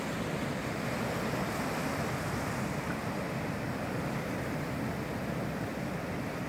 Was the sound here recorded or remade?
recorded